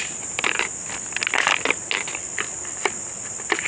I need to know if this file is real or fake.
real